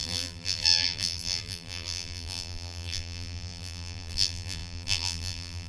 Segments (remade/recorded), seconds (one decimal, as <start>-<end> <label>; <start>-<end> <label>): 0.0-5.7 remade